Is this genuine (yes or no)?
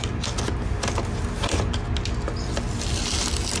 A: yes